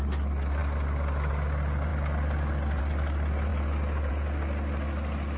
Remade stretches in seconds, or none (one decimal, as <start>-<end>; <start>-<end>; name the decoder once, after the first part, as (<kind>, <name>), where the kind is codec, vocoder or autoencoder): none